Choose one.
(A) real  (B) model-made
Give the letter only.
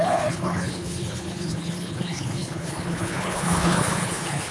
B